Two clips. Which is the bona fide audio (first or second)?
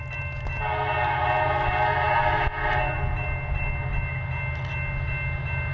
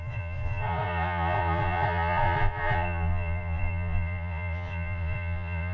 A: first